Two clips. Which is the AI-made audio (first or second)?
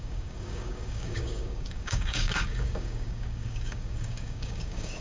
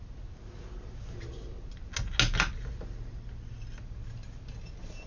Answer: first